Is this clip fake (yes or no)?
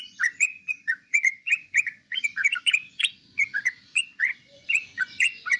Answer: yes